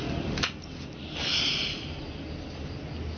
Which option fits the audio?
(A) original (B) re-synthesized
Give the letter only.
A